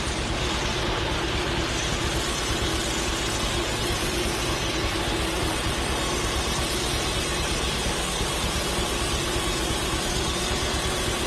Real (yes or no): yes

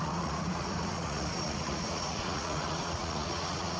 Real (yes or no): no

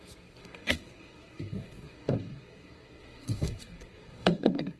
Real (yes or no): no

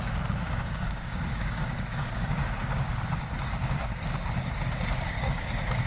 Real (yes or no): no